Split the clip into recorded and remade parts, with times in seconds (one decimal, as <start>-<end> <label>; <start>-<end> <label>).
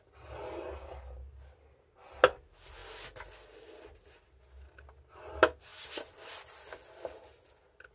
0.0-7.9 recorded